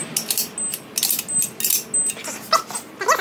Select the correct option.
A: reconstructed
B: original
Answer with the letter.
B